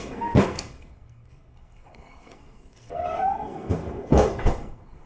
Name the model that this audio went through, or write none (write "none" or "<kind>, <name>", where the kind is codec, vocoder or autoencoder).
codec, SNAC